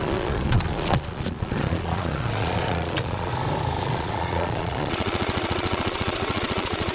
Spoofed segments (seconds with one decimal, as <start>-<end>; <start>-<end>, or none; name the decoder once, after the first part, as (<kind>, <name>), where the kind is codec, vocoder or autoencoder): 0.0-3.3 (vocoder, Vocos); 3.8-6.9